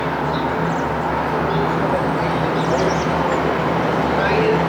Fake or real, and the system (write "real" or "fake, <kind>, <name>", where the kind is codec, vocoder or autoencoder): real